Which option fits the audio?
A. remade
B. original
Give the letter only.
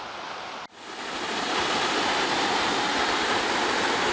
B